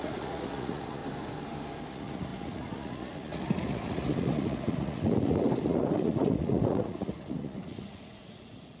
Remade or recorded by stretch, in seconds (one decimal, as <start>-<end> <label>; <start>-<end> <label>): 0.0-1.0 remade; 1.0-1.9 recorded; 1.9-8.8 remade